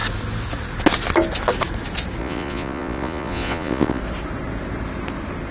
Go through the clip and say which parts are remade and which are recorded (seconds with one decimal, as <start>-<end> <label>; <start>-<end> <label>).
0.0-2.2 recorded; 2.2-4.0 remade; 4.0-5.5 recorded